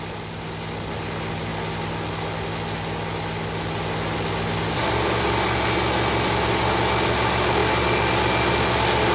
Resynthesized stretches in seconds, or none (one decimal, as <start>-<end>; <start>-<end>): none

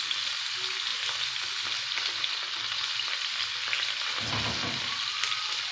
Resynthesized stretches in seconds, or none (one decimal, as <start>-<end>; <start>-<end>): none

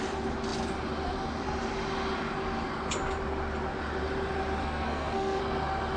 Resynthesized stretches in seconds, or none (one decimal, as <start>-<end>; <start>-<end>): 4.6-5.4

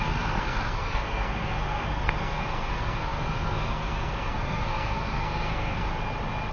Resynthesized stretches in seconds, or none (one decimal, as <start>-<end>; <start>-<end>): 0.0-5.9

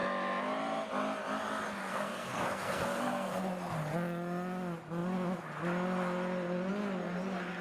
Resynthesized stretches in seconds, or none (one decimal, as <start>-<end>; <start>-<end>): 1.8-3.4

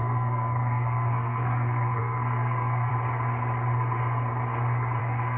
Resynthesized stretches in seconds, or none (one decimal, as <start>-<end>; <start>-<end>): 0.0-2.9; 5.0-5.4

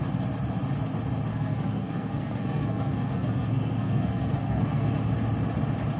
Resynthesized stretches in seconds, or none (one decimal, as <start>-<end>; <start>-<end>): 1.3-4.9